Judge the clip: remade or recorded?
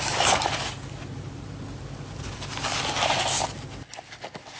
recorded